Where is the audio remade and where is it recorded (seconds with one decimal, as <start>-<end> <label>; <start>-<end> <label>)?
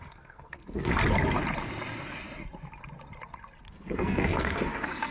0.0-1.0 remade; 1.0-3.7 recorded; 3.7-5.1 remade